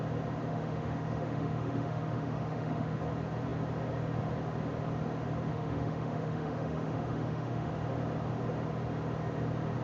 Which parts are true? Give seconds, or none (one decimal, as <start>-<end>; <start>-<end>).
0.0-0.5; 3.0-5.5; 7.7-9.8